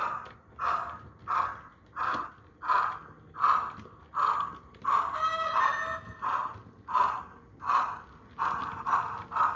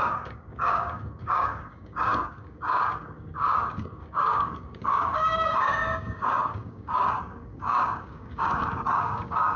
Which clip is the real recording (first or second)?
first